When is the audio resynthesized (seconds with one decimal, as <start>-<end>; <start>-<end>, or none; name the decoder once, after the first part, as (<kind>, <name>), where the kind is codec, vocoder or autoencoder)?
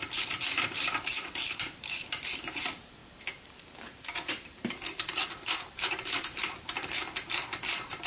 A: 0.0-8.1 (vocoder, BigVGAN v2)